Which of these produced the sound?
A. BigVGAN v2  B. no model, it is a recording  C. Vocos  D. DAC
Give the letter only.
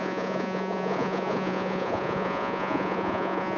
C